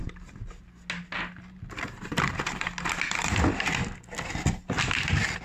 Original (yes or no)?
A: yes